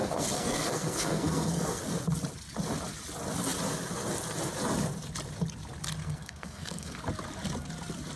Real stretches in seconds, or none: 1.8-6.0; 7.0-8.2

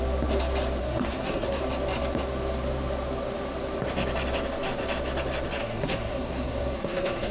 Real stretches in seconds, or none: 0.0-0.8; 1.6-5.6

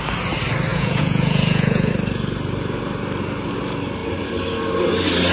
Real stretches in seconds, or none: 0.0-0.7; 1.9-5.3

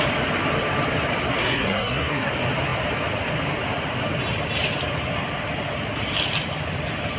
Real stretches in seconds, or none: 0.0-1.4; 2.3-7.2

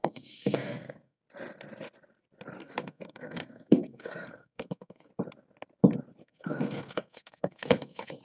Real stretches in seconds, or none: 1.2-2.6; 5.1-6.2

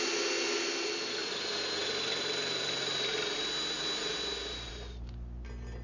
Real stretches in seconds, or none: 0.0-5.8